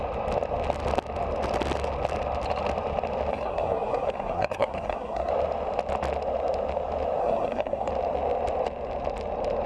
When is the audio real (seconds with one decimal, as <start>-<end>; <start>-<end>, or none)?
0.0-3.3; 5.3-7.2; 7.9-9.7

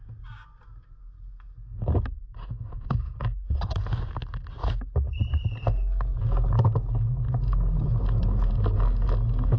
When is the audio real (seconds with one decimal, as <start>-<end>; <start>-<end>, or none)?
0.0-2.4; 3.0-9.6

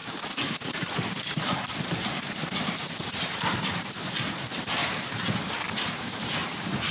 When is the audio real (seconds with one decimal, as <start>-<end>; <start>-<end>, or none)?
4.8-5.7

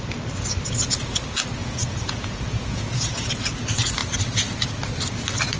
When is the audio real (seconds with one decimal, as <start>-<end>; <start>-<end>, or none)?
0.0-1.6; 3.3-5.6

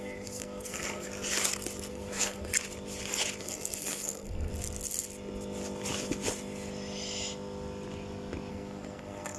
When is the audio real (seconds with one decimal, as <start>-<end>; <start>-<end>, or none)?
1.1-1.9; 2.5-3.4; 4.5-8.5